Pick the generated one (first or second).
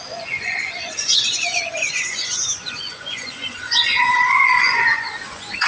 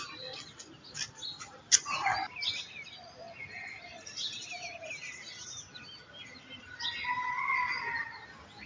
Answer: first